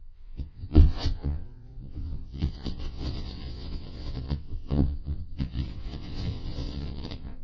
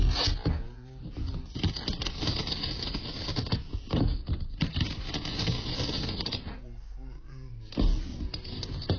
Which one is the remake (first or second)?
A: first